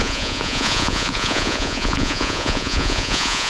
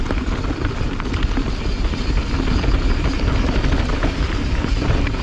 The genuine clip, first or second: second